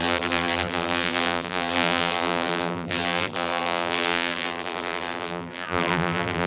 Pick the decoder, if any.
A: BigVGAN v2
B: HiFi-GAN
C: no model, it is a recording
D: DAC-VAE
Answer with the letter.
A